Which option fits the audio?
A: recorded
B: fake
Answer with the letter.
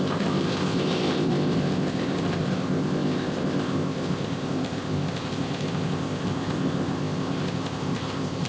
B